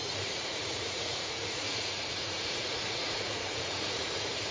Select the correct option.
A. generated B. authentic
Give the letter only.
A